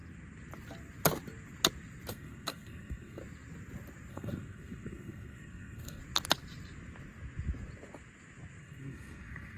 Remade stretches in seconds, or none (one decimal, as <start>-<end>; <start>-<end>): 2.1-3.2; 4.1-6.0; 8.6-9.6